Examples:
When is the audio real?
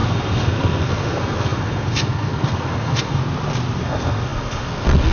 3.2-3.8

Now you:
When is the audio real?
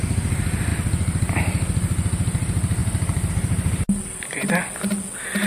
0.0-5.5